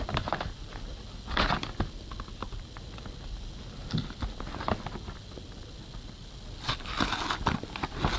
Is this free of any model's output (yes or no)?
yes